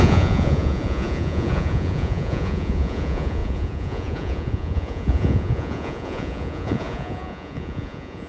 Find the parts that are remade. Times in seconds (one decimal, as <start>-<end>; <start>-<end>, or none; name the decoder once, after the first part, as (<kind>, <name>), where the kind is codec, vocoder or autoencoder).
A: 0.0-8.3 (vocoder, Vocos)